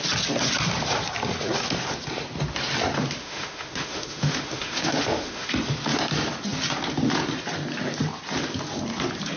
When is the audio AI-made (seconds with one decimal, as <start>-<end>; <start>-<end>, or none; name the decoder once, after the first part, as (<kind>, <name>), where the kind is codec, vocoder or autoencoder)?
3.2-5.5 (autoencoder, DAC-VAE)